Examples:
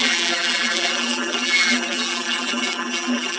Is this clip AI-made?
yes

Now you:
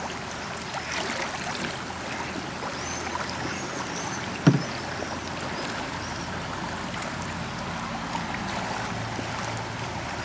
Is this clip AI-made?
no